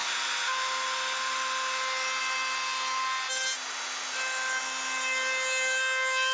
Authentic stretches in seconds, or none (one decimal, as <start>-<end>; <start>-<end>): 0.0-6.3